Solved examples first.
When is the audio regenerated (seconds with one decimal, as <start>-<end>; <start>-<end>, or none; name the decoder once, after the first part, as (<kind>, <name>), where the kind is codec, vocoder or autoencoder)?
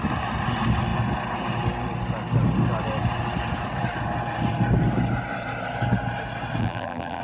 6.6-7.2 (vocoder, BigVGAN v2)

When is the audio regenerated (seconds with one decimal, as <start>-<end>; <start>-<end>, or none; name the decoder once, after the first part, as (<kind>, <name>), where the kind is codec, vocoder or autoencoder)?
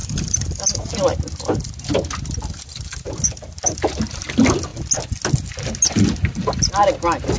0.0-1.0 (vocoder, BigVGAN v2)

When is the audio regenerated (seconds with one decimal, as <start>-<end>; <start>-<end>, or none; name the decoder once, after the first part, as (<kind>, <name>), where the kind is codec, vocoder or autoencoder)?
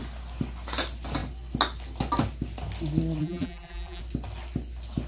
3.2-4.0 (vocoder, BigVGAN v2)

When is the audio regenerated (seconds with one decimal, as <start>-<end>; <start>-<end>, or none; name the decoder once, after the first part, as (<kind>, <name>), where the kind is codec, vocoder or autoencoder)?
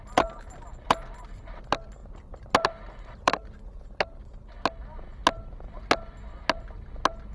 2.0-4.2 (vocoder, BigVGAN v2)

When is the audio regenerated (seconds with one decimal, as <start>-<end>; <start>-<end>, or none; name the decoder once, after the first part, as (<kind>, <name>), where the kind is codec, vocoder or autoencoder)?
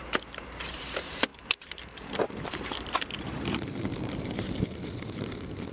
0.0-5.7 (vocoder, BigVGAN v2)